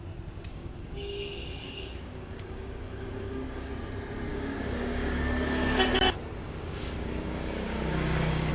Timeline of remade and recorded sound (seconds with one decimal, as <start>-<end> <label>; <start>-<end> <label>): 0.0-0.5 recorded; 0.5-3.7 remade; 3.7-4.3 recorded; 4.3-5.9 remade; 5.9-6.4 recorded; 6.4-8.5 remade